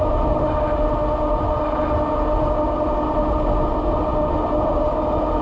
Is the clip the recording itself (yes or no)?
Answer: yes